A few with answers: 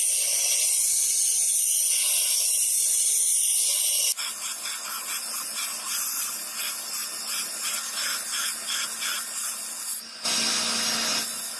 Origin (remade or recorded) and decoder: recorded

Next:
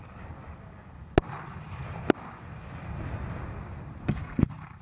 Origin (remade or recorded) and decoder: recorded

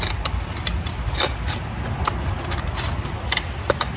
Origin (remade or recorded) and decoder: recorded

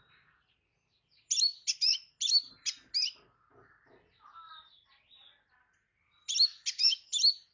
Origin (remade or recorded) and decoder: recorded